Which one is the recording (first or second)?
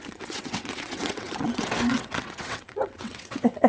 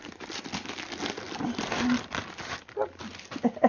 second